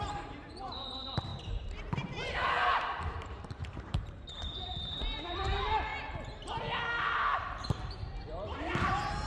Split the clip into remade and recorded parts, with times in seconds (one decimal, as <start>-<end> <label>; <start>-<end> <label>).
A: 0.0-5.9 remade; 5.9-7.4 recorded; 7.4-9.3 remade